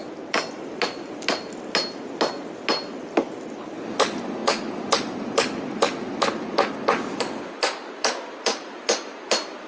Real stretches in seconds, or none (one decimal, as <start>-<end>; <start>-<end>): 0.0-9.7